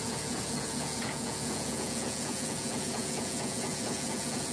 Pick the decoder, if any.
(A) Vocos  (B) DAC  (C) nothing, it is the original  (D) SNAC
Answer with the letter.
A